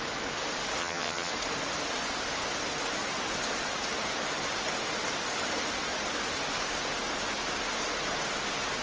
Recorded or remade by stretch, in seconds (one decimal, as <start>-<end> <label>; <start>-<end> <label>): 0.0-0.8 recorded; 0.8-1.3 remade; 1.3-8.8 recorded